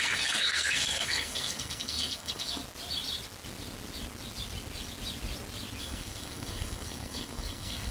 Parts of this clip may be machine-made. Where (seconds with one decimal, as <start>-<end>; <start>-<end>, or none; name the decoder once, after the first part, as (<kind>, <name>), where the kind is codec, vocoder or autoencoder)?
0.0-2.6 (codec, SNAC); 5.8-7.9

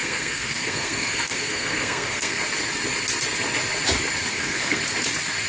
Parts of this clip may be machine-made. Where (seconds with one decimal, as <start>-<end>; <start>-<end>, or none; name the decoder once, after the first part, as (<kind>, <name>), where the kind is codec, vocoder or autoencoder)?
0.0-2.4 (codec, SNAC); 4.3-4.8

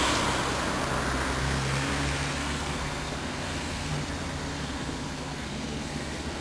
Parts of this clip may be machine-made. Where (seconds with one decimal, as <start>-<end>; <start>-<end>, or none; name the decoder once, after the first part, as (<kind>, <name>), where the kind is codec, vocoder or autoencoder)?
1.4-1.9 (codec, SNAC); 2.4-3.9; 4.5-6.4